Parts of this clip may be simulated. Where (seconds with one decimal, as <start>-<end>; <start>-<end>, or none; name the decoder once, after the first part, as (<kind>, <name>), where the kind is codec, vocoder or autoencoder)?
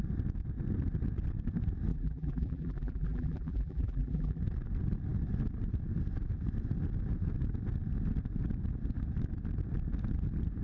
1.9-4.4 (vocoder, BigVGAN v2)